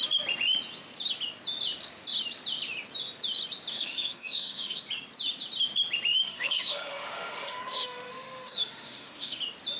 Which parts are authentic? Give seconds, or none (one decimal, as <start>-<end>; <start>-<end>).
0.0-3.7; 4.8-6.1; 9.4-9.8

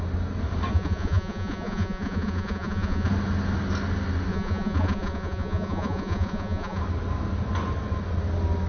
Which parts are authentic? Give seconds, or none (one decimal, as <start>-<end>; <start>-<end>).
0.0-0.7; 3.1-4.3; 6.8-8.7

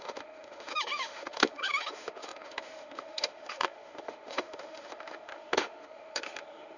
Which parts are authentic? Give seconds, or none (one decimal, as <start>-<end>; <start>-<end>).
none

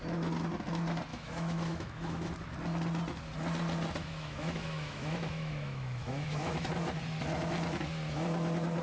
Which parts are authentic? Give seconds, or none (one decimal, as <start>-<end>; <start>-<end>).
0.0-1.1; 2.3-4.0; 6.7-8.8

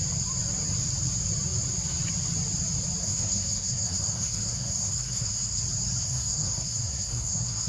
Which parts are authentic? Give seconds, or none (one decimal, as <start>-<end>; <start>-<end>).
0.0-3.0; 5.6-6.0

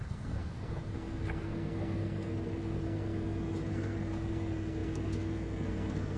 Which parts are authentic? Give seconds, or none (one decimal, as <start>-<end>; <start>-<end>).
none

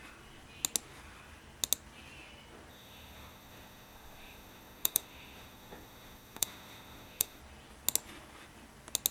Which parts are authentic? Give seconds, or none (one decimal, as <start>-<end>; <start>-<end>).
0.0-2.7; 7.4-9.1

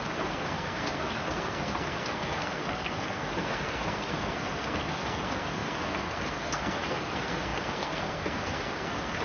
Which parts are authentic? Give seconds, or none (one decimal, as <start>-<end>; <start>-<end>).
none